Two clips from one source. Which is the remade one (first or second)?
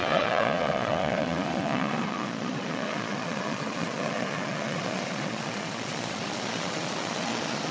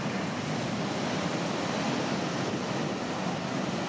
first